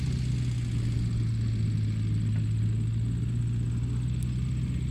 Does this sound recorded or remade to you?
recorded